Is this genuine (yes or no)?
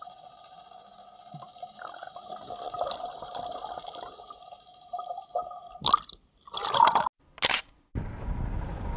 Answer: yes